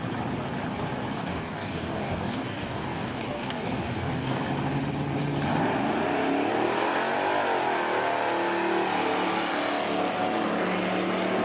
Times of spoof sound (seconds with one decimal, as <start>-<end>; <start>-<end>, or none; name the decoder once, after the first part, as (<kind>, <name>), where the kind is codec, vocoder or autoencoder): 1.2-4.4 (codec, DAC)